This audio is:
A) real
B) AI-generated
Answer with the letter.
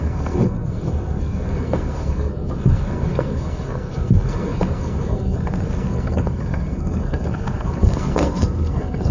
B